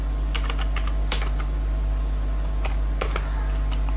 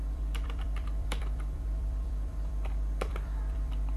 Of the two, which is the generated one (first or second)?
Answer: second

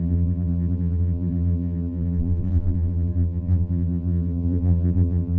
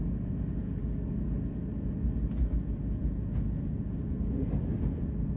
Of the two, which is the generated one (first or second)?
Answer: first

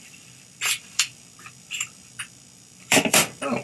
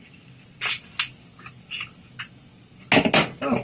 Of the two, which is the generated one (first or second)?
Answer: first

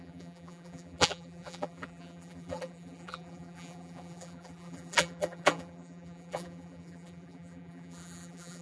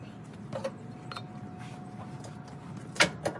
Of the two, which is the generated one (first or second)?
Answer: first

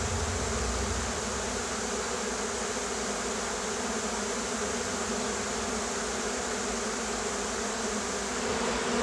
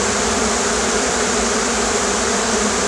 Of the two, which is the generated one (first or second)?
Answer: second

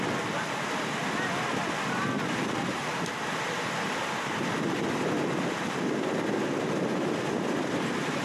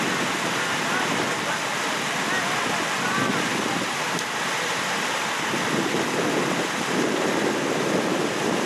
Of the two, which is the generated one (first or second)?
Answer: second